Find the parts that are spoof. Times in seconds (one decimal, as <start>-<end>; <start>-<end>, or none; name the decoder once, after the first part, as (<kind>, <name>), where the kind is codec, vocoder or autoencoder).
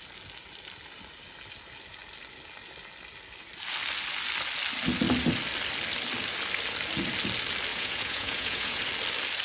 7.7-8.8 (vocoder, Vocos)